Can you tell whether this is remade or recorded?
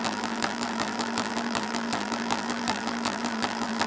remade